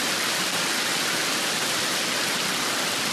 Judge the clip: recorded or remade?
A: recorded